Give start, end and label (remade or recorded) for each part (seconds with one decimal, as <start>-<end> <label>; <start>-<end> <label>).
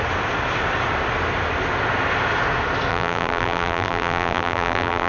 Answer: 0.0-2.9 recorded; 2.9-5.1 remade